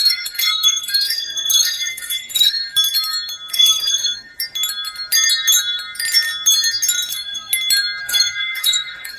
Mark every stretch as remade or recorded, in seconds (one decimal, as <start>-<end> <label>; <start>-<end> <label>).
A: 0.0-2.6 remade; 2.6-3.5 recorded; 3.5-4.3 remade; 4.3-7.1 recorded; 7.1-7.5 remade; 7.5-8.0 recorded; 8.0-9.2 remade

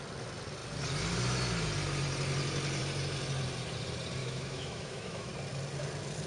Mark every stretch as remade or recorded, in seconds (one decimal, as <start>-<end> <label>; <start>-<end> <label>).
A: 0.0-4.2 recorded; 4.2-5.3 remade; 5.3-6.3 recorded

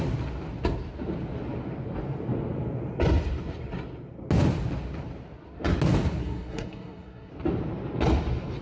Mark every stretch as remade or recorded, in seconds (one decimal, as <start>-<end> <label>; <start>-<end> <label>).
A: 0.0-6.2 recorded; 6.2-7.3 remade; 7.3-8.6 recorded

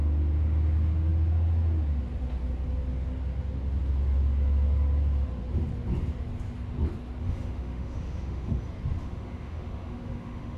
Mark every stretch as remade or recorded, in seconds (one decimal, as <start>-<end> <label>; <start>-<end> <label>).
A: 0.0-7.2 recorded; 7.2-8.6 remade; 8.6-9.0 recorded; 9.0-10.6 remade

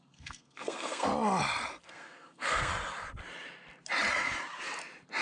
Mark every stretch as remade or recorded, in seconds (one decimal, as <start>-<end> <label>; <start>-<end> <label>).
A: 0.0-1.1 remade; 1.1-1.9 recorded; 1.9-2.7 remade; 2.7-5.2 recorded

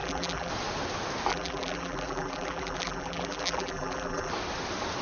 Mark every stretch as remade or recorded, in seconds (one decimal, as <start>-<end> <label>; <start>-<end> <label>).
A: 0.0-0.5 remade; 0.5-1.3 recorded; 1.3-4.3 remade; 4.3-5.0 recorded